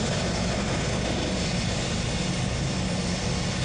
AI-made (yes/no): no